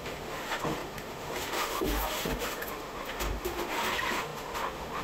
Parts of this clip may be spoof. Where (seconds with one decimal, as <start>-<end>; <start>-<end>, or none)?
0.0-5.0